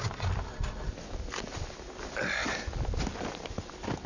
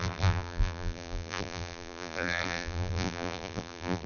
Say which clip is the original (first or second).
first